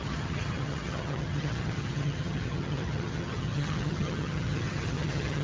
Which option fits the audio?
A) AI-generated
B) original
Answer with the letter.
A